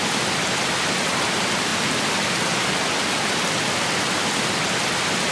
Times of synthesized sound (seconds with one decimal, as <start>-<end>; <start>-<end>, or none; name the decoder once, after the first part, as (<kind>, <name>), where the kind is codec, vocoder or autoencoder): none